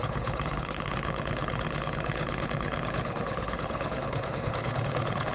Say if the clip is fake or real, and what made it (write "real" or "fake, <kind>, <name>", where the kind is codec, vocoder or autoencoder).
fake, codec, HILCodec